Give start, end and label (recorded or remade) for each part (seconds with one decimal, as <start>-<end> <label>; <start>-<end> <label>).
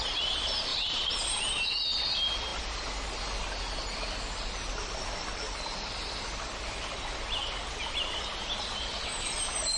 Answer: 0.0-0.7 recorded; 0.7-1.2 remade; 1.2-9.8 recorded